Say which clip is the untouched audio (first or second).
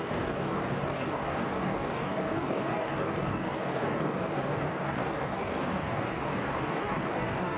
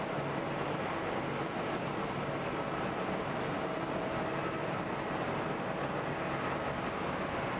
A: second